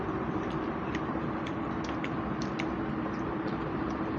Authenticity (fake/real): real